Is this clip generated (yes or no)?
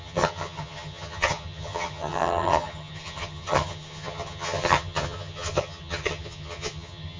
yes